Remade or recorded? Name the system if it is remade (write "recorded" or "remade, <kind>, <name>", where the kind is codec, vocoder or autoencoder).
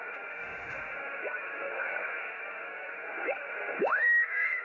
remade, autoencoder, DAC-VAE